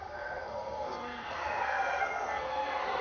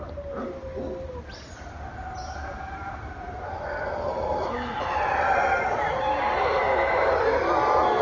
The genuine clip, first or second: second